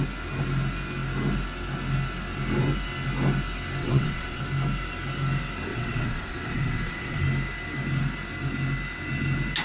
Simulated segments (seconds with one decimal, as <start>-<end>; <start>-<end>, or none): 3.8-4.4; 5.7-7.2